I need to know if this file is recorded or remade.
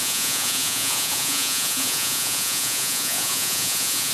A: remade